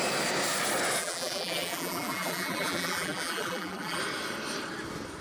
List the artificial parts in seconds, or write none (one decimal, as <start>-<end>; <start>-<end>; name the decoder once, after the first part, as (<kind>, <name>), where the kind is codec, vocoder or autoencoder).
1.0-4.0 (vocoder, BigVGAN v2)